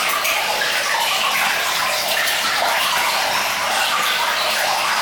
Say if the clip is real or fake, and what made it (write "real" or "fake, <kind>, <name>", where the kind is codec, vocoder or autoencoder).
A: real